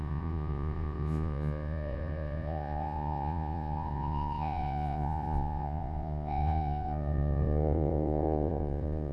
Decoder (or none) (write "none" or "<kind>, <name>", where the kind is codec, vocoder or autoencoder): vocoder, Vocos